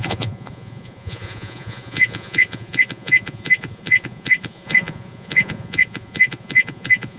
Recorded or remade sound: remade